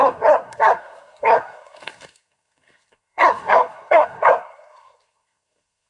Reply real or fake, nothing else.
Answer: fake